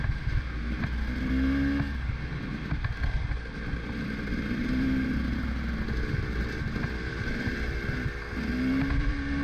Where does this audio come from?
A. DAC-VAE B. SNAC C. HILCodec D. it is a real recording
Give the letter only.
D